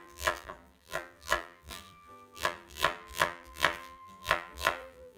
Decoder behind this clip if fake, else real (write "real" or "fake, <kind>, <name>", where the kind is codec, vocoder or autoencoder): fake, vocoder, BigVGAN v2